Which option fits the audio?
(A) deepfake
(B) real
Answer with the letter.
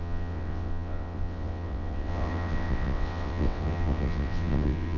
A